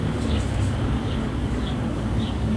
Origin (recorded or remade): remade